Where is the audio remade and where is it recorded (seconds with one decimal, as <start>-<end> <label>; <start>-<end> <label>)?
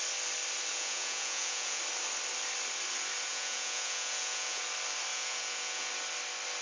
0.0-0.7 recorded; 0.7-1.8 remade; 1.8-3.3 recorded; 3.3-4.6 remade; 4.6-5.1 recorded; 5.1-5.9 remade; 5.9-6.6 recorded